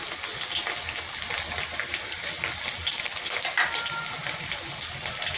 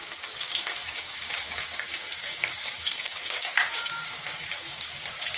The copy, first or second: second